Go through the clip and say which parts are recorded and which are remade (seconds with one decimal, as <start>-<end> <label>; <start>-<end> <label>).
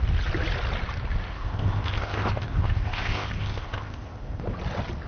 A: 0.0-1.3 recorded; 1.3-4.4 remade; 4.4-5.1 recorded